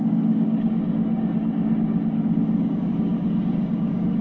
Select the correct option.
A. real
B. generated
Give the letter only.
B